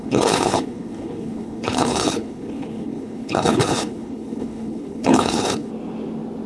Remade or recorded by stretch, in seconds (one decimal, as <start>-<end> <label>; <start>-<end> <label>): 0.0-5.7 remade; 5.7-6.5 recorded

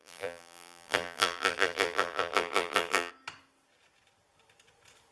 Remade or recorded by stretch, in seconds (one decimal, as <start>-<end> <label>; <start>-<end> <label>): 0.0-3.1 remade; 3.1-5.1 recorded